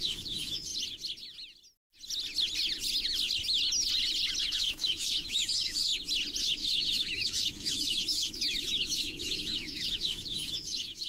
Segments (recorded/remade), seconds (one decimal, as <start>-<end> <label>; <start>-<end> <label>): 0.0-0.7 remade; 0.7-4.4 recorded; 4.4-5.9 remade; 5.9-6.4 recorded; 6.4-11.1 remade